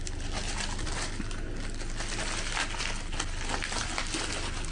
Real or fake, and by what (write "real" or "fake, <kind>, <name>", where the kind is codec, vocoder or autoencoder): real